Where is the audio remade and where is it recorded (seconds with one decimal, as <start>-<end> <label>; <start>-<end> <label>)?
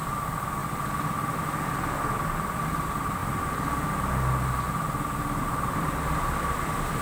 0.0-0.6 remade; 0.6-1.1 recorded; 1.1-3.2 remade; 3.2-5.4 recorded; 5.4-7.0 remade